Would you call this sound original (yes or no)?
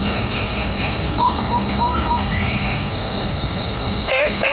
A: no